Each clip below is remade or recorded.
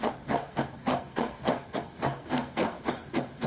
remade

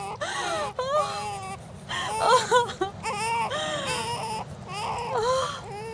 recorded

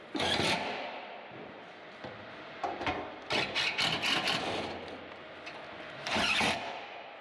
recorded